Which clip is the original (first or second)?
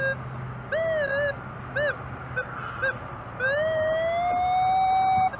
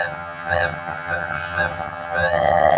first